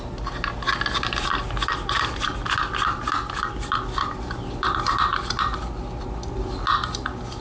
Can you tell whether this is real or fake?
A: real